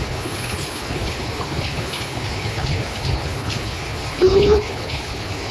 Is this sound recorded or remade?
remade